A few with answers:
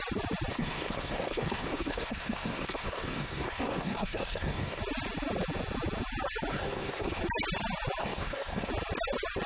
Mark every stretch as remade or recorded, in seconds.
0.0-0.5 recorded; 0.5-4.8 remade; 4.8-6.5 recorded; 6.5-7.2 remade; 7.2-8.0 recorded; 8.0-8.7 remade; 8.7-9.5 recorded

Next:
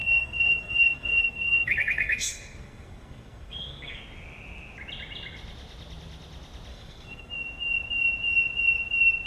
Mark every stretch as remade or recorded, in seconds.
0.0-4.0 remade; 4.0-6.7 recorded; 6.7-7.3 remade; 7.3-9.3 recorded

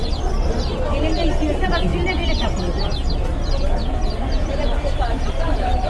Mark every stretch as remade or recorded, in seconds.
0.0-5.9 recorded

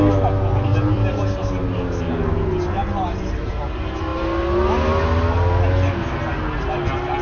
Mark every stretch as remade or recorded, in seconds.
0.0-7.2 recorded

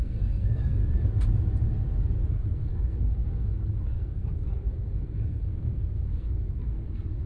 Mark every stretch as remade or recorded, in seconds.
0.0-0.8 remade; 0.8-2.3 recorded; 2.3-7.3 remade

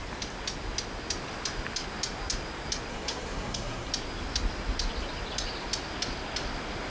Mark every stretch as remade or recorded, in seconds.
0.0-2.9 recorded; 2.9-3.9 remade; 3.9-6.9 recorded

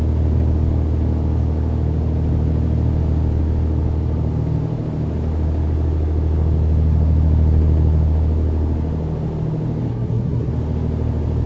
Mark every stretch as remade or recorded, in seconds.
0.0-9.9 recorded; 9.9-10.5 remade; 10.5-11.5 recorded

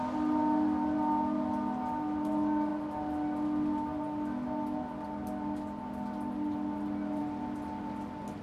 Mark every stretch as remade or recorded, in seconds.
0.0-8.4 recorded